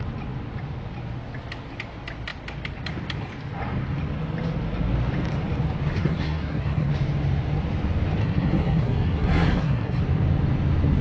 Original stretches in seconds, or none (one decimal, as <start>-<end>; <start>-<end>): 0.0-6.0; 6.9-8.2; 10.0-11.0